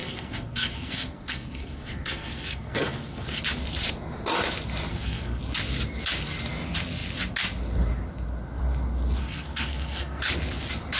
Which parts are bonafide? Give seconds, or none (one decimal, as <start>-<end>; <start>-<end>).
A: 3.4-4.9; 5.4-9.2; 10.2-11.0

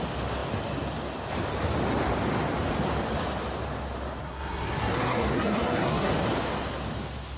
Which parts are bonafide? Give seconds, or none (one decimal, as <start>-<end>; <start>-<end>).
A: 0.0-4.2; 6.1-7.4

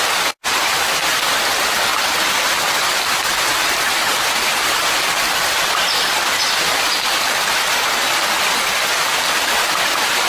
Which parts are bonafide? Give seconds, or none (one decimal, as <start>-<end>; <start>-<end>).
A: 0.0-1.9; 5.2-10.3

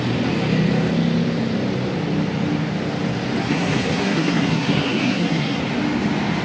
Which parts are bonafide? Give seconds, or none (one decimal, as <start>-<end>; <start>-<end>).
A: 0.0-3.4; 5.6-6.4

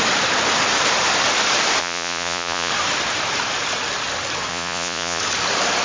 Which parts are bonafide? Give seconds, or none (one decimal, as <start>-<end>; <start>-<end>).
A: 0.0-1.8; 2.7-4.5; 5.2-5.8

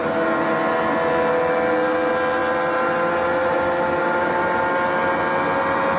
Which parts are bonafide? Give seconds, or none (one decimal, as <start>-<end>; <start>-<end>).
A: 0.0-6.0

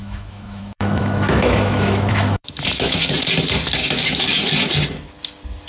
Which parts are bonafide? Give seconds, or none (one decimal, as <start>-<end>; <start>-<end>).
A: 3.0-3.9; 4.3-5.7